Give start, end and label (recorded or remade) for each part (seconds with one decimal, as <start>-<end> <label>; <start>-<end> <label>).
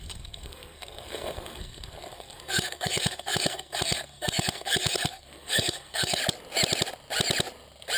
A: 0.0-6.2 remade; 6.2-8.0 recorded